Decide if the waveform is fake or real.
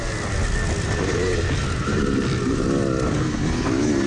real